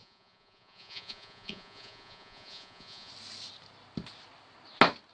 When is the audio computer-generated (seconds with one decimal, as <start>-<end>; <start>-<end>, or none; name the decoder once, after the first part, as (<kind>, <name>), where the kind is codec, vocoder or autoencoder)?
0.0-3.1 (vocoder, Vocos)